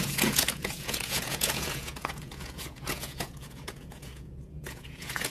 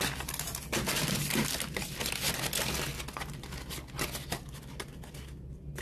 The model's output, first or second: first